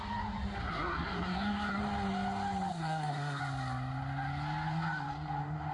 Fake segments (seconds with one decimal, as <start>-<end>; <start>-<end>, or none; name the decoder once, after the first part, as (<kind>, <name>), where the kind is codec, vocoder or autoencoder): 0.6-1.8 (codec, SNAC); 2.7-3.4